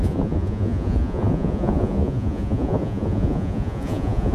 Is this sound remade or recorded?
remade